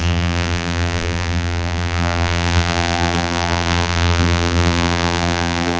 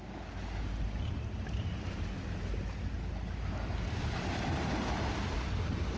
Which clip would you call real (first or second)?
second